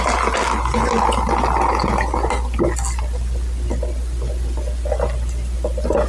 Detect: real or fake real